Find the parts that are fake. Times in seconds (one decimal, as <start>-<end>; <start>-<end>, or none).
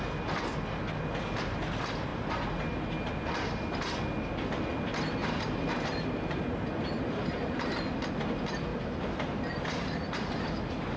5.2-7.8; 8.7-11.0